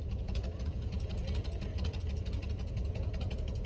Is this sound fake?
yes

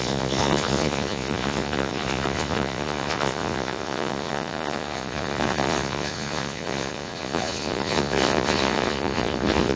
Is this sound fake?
yes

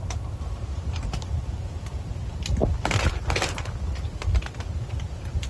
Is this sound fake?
no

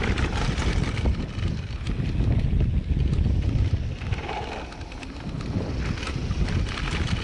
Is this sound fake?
no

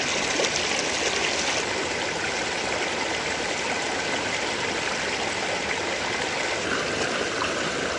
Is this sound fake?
no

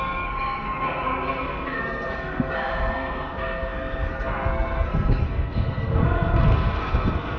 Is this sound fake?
yes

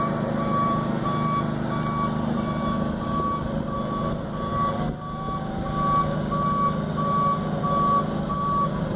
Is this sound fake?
no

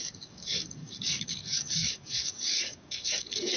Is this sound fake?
yes